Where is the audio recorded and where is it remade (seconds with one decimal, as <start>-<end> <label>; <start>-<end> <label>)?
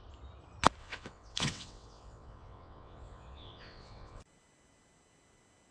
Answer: 0.0-0.8 recorded; 0.8-4.2 remade; 4.2-5.7 recorded